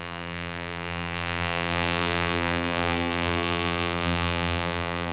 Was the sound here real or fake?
fake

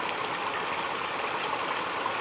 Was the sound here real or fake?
real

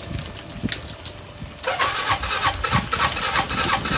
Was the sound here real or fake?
real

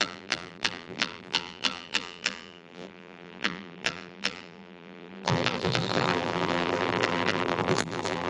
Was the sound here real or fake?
fake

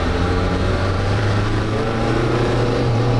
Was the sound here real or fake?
fake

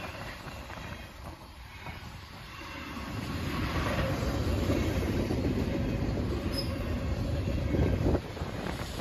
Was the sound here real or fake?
fake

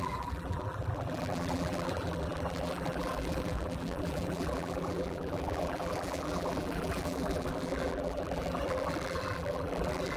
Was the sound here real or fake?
fake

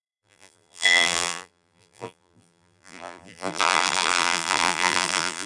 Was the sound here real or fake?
fake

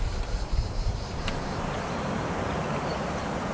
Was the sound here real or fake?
fake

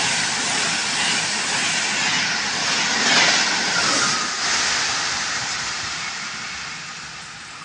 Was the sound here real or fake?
real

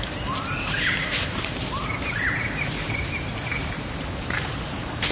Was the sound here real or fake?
fake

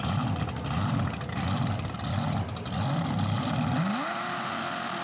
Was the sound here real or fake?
real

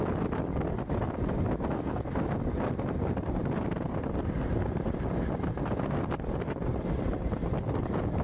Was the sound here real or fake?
real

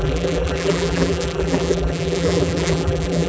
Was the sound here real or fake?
fake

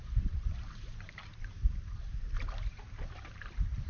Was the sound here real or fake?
fake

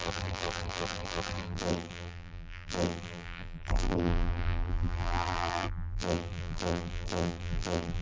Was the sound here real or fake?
fake